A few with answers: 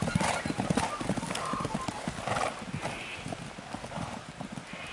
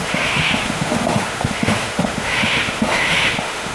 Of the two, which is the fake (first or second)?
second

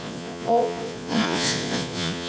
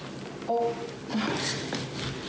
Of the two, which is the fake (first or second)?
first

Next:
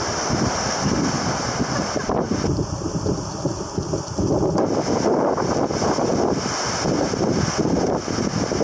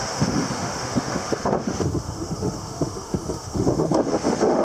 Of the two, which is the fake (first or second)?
second